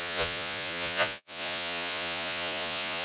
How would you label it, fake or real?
fake